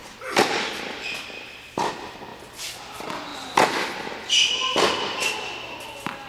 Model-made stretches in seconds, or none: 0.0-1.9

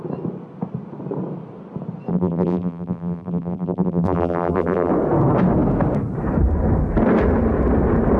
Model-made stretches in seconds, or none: 2.1-4.9

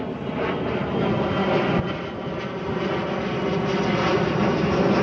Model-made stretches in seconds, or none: none

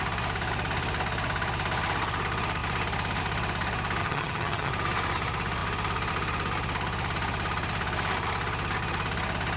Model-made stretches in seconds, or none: 4.0-4.7

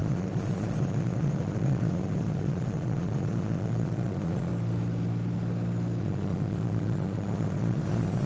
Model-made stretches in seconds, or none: 0.0-4.5; 6.0-8.3

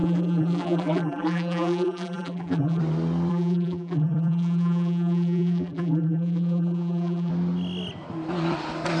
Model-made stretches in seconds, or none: 0.0-2.8; 3.3-7.3

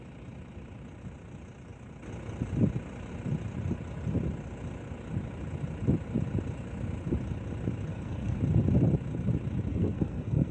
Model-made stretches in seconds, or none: 7.9-8.4; 9.7-10.5

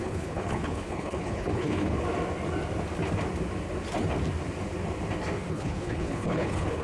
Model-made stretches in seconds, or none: 0.0-1.9; 5.5-6.8